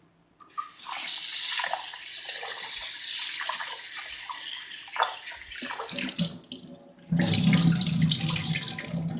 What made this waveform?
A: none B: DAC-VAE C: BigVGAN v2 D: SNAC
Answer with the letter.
A